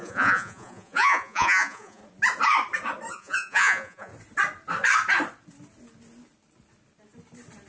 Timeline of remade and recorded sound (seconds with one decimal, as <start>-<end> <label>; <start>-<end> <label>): 0.0-2.0 remade; 2.0-3.1 recorded; 3.1-4.1 remade; 4.1-7.7 recorded